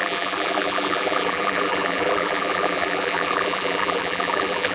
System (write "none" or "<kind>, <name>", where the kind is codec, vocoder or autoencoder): vocoder, BigVGAN v2